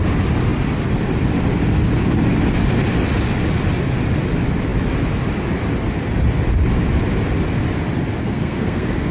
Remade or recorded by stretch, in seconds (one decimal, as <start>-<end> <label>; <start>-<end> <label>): 0.0-8.2 recorded; 8.2-9.1 remade